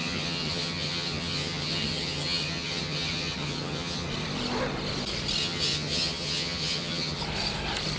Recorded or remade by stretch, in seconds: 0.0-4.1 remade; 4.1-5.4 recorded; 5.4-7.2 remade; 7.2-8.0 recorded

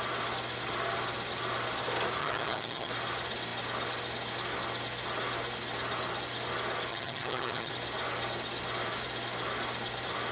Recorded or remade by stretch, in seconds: 0.0-2.2 recorded; 2.2-2.9 remade; 2.9-6.9 recorded; 6.9-7.7 remade; 7.7-10.3 recorded